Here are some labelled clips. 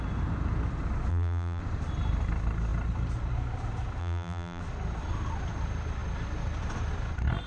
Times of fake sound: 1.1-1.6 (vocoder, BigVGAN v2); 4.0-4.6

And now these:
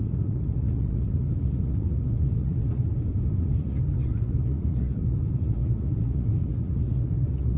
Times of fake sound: 0.0-2.9 (vocoder, Vocos); 3.4-7.6

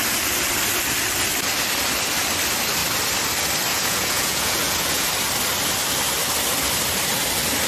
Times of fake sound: 3.7-5.1 (vocoder, Vocos)